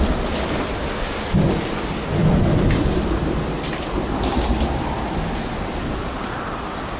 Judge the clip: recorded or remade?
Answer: recorded